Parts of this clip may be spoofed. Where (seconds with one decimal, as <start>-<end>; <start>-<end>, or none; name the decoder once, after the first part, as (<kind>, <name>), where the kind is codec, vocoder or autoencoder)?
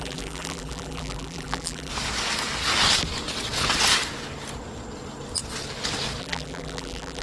0.0-1.9 (vocoder, BigVGAN v2); 6.2-7.2